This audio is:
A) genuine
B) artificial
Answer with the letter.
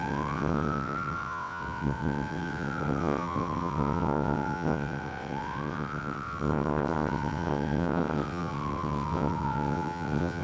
B